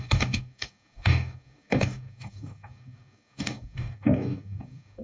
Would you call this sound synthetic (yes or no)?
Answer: yes